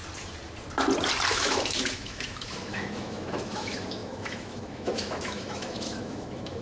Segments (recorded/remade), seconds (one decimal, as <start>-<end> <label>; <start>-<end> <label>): 0.0-1.3 recorded; 1.3-6.6 remade